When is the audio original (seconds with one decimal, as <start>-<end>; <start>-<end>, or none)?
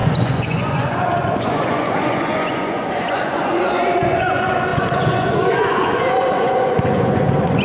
none